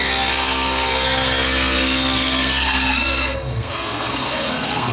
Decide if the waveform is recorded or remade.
remade